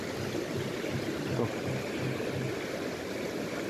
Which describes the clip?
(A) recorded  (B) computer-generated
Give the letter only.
A